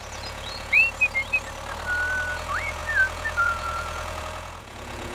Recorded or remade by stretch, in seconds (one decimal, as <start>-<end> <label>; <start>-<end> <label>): 0.0-0.8 remade; 0.8-2.3 recorded; 2.3-5.1 remade